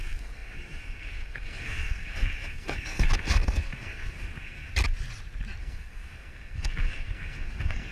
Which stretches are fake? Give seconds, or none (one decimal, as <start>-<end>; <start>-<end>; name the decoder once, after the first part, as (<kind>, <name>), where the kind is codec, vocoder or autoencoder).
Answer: 0.0-4.7 (codec, SNAC); 5.6-7.9